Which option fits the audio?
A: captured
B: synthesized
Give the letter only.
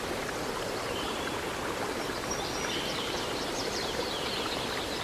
B